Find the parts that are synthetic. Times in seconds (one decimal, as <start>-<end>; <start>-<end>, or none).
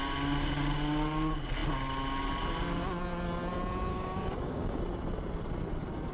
3.9-4.8